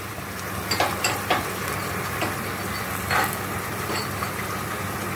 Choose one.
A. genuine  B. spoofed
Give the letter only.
A